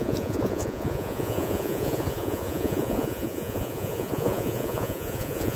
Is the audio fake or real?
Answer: fake